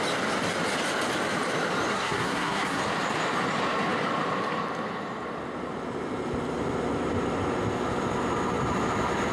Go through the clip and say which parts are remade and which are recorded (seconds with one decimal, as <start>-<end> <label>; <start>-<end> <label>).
0.0-1.9 recorded; 1.9-2.8 remade; 2.8-9.3 recorded